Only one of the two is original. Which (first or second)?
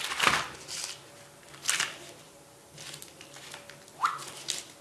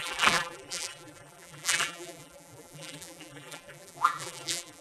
first